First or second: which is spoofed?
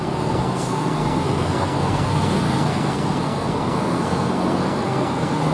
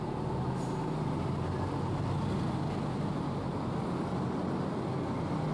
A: first